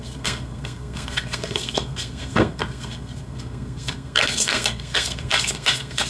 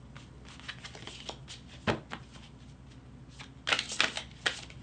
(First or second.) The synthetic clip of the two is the first